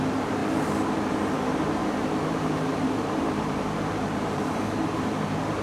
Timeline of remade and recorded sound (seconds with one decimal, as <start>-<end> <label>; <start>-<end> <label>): 0.0-5.6 remade